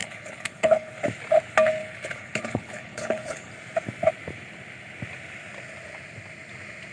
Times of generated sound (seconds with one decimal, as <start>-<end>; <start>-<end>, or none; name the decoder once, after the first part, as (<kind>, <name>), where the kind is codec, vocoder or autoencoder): 0.0-0.9 (codec, HILCodec); 1.8-3.5